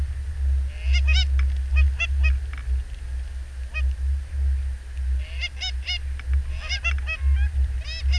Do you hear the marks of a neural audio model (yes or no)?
no